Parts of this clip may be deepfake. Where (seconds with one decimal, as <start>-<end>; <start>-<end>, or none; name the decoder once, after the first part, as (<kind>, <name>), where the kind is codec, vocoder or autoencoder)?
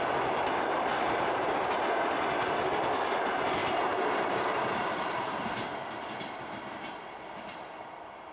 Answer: 0.9-2.1 (vocoder, BigVGAN v2); 3.6-8.3